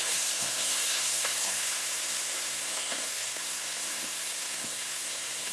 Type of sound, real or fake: fake